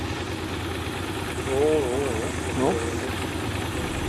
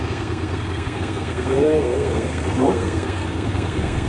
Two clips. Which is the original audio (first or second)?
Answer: first